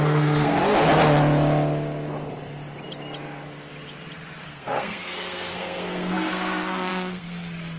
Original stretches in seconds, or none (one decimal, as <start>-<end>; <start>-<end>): 0.6-4.4